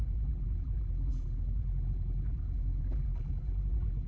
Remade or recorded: remade